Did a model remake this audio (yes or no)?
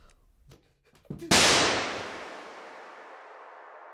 no